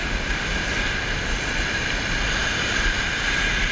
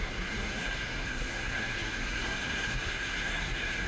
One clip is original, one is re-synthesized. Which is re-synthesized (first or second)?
second